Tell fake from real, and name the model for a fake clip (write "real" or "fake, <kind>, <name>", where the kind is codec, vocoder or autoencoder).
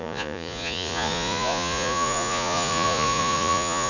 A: fake, vocoder, Vocos